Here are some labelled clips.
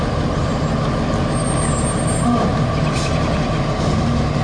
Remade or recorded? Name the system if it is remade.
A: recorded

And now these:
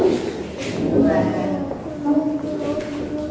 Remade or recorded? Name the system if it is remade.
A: recorded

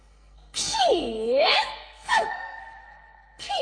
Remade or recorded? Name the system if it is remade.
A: remade, codec, SNAC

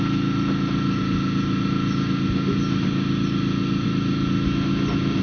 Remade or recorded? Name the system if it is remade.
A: recorded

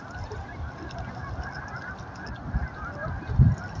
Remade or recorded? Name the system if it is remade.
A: recorded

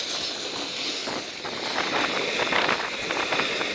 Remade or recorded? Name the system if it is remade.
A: recorded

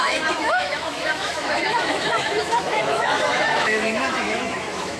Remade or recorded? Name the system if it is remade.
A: remade, autoencoder, DAC-VAE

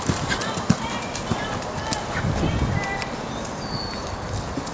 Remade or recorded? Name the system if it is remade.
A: recorded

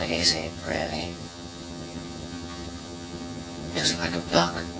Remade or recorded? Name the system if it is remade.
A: remade, vocoder, HiFi-GAN